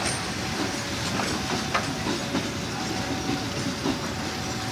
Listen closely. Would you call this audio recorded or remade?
recorded